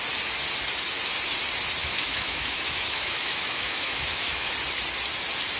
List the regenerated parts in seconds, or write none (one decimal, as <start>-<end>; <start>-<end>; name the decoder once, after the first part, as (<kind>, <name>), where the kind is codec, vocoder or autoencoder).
1.8-4.5 (autoencoder, DAC-VAE)